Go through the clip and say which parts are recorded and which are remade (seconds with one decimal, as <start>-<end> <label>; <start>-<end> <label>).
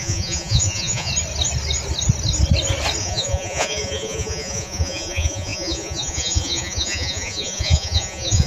0.0-1.1 remade; 1.1-3.0 recorded; 3.0-8.5 remade